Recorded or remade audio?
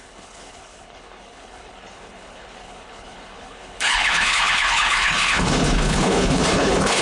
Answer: remade